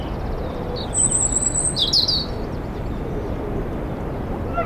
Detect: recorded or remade recorded